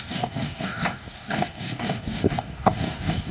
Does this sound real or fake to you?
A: fake